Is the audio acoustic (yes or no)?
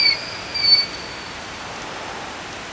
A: yes